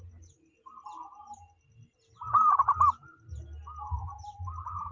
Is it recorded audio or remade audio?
recorded